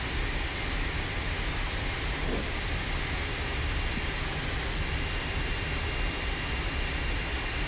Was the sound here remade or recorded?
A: recorded